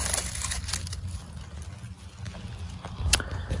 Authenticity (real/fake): real